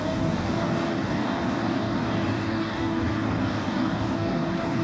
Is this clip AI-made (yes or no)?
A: yes